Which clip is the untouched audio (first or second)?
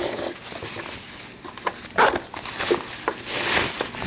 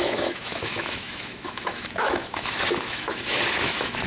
first